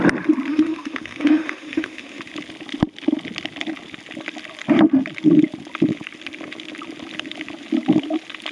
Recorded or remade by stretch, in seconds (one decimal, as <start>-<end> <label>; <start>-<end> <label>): 0.0-0.5 recorded; 0.5-2.2 remade; 2.2-8.5 recorded